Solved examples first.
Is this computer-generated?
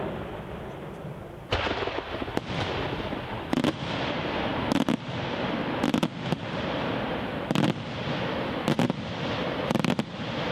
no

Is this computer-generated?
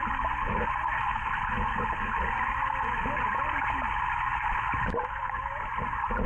no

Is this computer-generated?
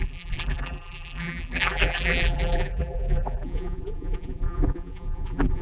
yes